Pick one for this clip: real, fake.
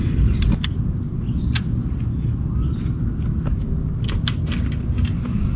real